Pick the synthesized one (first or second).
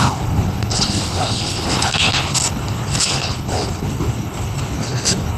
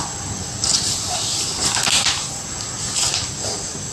first